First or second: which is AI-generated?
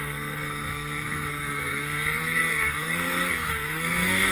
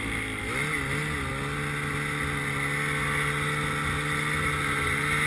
first